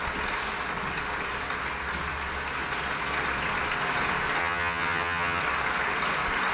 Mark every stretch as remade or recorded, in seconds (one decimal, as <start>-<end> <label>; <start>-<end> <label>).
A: 0.0-4.4 recorded; 4.4-5.4 remade; 5.4-6.5 recorded